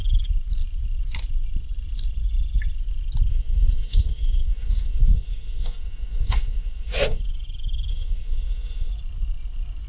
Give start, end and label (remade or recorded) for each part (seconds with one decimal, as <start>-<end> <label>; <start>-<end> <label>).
0.0-3.3 recorded; 3.3-7.2 remade; 7.2-7.9 recorded; 7.9-8.9 remade; 8.9-9.9 recorded